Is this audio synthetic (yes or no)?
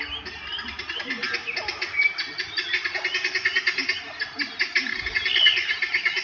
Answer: no